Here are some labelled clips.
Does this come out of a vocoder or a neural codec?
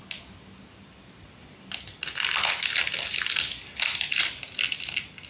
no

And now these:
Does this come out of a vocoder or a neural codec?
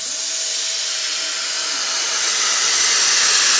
no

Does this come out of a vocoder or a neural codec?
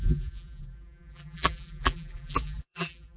yes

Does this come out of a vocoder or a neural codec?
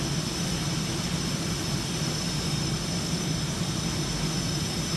no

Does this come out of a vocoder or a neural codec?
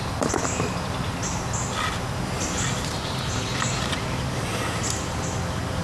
no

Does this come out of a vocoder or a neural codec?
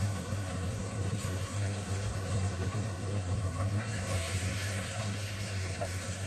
yes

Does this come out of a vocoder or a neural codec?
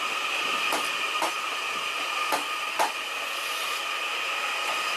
no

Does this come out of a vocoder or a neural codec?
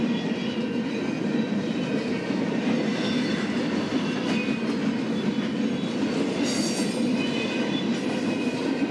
no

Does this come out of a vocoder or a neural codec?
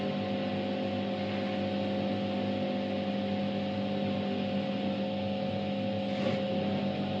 no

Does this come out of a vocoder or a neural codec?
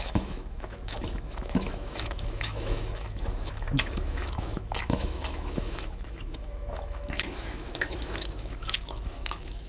yes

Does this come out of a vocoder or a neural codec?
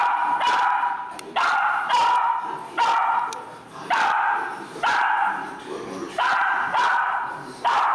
yes